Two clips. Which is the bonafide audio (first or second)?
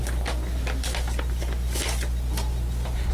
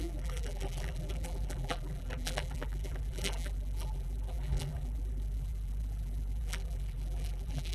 first